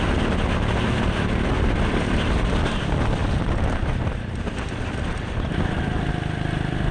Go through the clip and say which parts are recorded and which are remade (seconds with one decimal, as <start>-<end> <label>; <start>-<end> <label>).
0.0-6.9 recorded